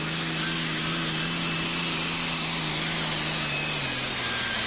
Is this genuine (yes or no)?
yes